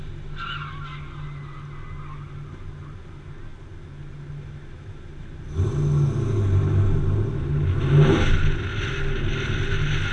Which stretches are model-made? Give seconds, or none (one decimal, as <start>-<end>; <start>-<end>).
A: none